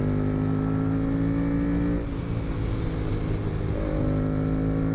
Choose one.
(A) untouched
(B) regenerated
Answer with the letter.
A